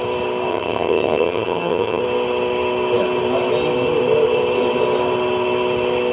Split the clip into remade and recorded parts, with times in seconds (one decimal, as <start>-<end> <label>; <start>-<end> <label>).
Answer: 0.0-0.5 recorded; 0.5-2.0 remade; 2.0-6.1 recorded